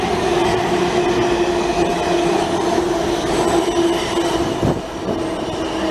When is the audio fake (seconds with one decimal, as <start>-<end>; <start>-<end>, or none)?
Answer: none